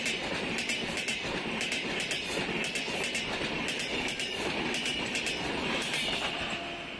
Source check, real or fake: real